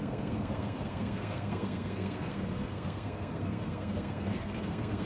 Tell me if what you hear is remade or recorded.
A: remade